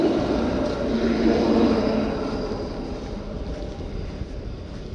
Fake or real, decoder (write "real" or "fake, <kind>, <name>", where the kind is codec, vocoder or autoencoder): real